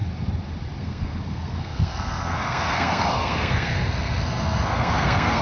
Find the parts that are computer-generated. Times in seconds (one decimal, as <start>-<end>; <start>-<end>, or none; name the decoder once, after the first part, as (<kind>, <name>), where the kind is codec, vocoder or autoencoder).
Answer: 0.8-5.4 (codec, SNAC)